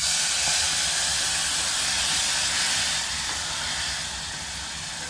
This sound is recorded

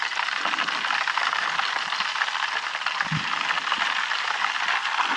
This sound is recorded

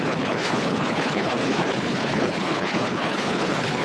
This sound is remade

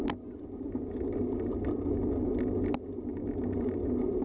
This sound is recorded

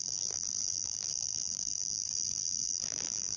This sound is remade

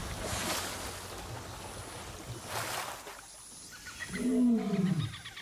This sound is recorded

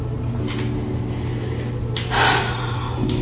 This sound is recorded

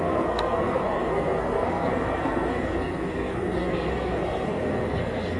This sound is remade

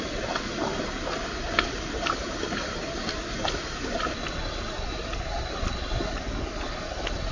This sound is recorded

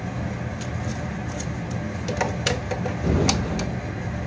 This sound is recorded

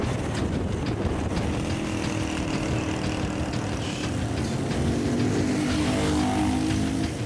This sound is recorded